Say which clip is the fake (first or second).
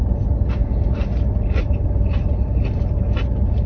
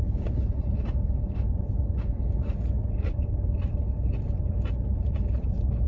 second